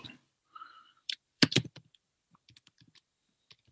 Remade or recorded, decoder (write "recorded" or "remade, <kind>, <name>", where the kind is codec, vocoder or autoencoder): remade, vocoder, BigVGAN v2